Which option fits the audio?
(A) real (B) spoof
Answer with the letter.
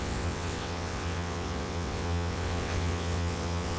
B